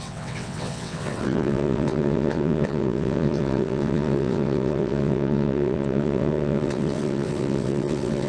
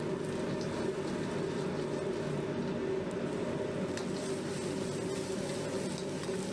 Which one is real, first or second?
second